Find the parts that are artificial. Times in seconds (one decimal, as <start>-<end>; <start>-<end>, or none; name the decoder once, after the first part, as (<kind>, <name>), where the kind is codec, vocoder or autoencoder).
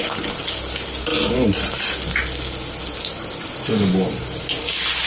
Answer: none